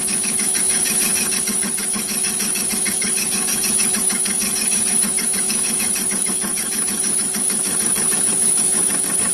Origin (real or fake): fake